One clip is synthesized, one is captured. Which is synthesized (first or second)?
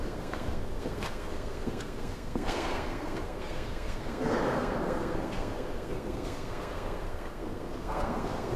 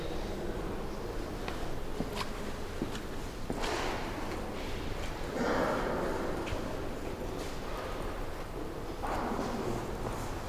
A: first